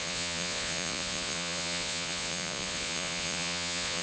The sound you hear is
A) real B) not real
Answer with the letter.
B